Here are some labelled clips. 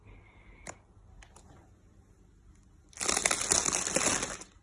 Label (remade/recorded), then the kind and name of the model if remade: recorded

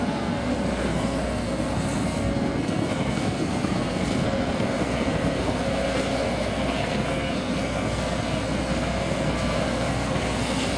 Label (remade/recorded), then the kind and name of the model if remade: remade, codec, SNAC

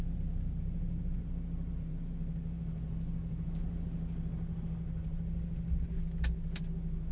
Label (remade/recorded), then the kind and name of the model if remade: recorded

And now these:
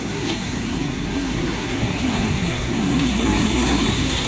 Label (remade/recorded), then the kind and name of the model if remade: remade, codec, SNAC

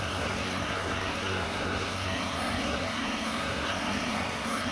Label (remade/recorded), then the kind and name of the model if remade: remade, codec, SNAC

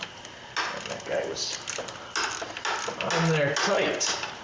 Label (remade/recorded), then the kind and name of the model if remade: recorded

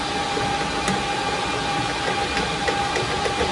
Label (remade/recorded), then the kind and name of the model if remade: recorded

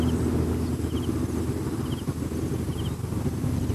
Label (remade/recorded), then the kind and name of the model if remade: recorded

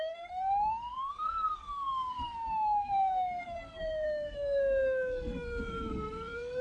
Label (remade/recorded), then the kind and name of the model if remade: remade, codec, SNAC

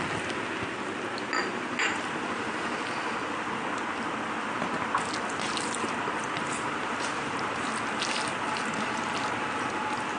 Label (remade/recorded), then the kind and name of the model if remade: recorded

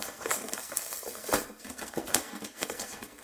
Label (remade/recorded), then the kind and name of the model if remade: remade, codec, SNAC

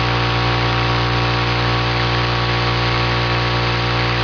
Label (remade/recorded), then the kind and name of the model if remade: recorded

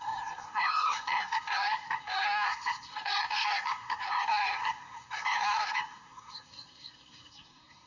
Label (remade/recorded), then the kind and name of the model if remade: remade, codec, SNAC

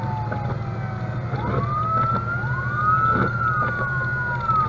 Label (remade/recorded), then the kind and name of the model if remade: recorded